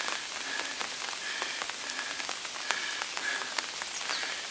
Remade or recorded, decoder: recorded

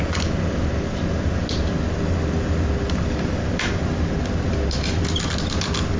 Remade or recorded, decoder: recorded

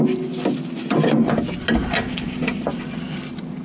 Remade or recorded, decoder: recorded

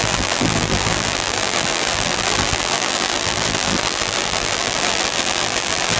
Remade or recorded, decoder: remade, vocoder, BigVGAN v2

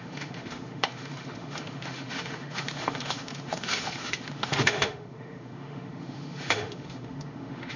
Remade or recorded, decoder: remade, autoencoder, DAC-VAE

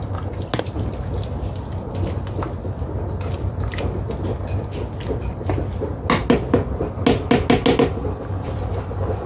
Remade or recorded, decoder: recorded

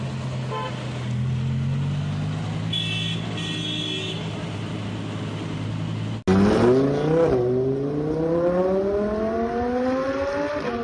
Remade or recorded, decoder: recorded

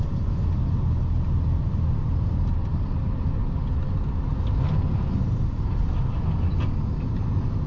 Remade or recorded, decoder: recorded